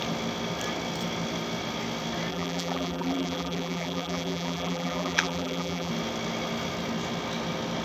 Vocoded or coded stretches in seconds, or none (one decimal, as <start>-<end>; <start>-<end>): 2.3-5.9